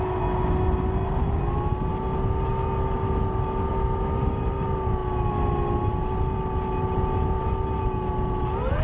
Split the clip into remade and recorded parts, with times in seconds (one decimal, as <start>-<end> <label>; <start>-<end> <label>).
0.0-8.8 recorded